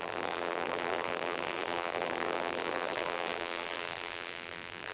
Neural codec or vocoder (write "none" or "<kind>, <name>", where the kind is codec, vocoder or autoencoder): vocoder, BigVGAN v2